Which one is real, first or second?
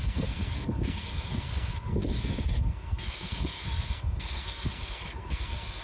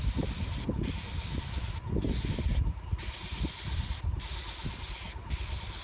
second